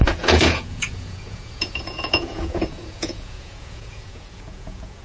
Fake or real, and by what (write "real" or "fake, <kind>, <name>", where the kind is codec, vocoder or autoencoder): fake, vocoder, Vocos